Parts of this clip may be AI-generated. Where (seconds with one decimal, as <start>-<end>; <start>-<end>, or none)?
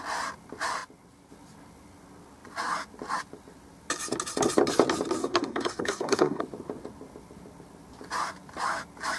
5.2-6.4